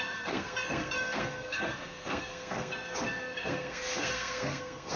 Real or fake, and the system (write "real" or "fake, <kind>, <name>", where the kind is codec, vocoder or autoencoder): fake, codec, SNAC